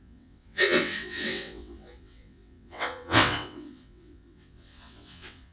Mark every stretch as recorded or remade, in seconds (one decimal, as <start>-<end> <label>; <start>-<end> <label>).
0.0-5.5 remade